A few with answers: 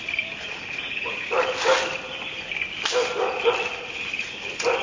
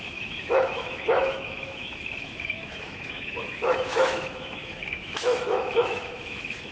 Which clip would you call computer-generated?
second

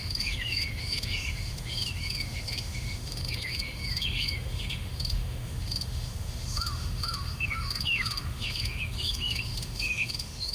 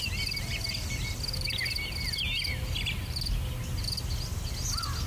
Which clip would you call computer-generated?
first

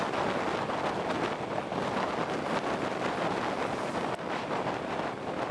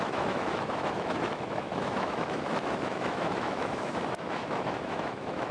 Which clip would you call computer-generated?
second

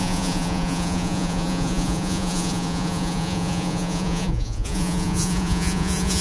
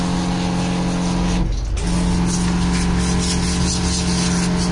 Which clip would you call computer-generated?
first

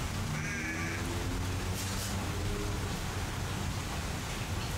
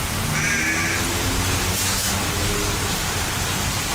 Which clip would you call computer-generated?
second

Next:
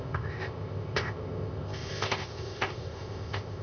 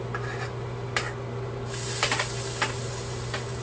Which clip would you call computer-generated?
first